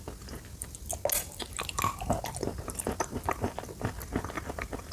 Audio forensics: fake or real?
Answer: real